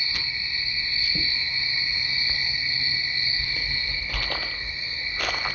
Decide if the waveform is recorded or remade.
recorded